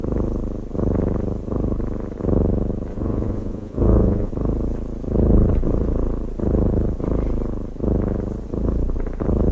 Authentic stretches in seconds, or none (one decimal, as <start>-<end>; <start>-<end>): 0.0-2.9; 4.3-9.5